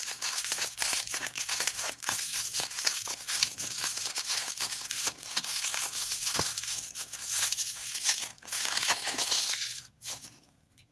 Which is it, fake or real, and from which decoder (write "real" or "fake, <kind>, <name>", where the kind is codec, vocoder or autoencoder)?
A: fake, codec, SNAC